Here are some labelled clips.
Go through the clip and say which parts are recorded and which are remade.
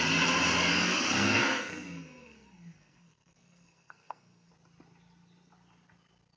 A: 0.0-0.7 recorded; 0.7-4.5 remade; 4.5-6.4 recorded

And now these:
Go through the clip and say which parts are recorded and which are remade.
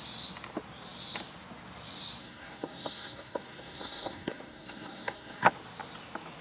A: 0.0-2.2 recorded; 2.2-5.5 remade; 5.5-6.4 recorded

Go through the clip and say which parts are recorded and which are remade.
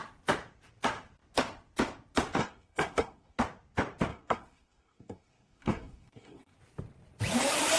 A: 0.0-2.4 recorded; 2.4-3.4 remade; 3.4-4.1 recorded; 4.1-6.6 remade; 6.6-7.8 recorded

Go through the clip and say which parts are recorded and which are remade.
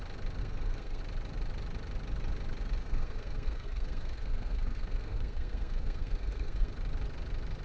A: 0.0-0.4 recorded; 0.4-1.0 remade; 1.0-2.8 recorded; 2.8-6.7 remade; 6.7-7.6 recorded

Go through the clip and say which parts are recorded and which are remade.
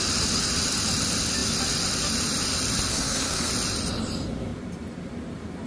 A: 0.0-2.9 recorded; 2.9-3.5 remade; 3.5-5.7 recorded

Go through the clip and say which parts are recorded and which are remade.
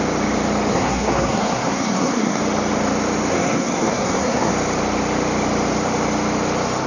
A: 0.0-0.7 recorded; 0.7-2.4 remade; 2.4-3.3 recorded; 3.3-4.5 remade; 4.5-6.9 recorded